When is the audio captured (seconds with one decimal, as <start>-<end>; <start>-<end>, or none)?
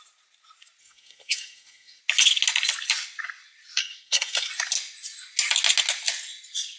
0.0-0.8; 2.0-3.8; 4.5-6.8